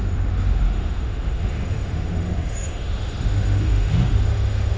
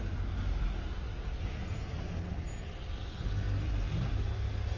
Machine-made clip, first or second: first